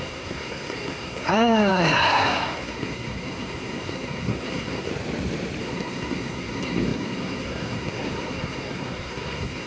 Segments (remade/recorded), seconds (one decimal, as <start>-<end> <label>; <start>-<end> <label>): 0.0-4.9 remade; 4.9-5.6 recorded; 5.6-9.7 remade